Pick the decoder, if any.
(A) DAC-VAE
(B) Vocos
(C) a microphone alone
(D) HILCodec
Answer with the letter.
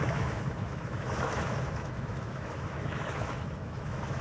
A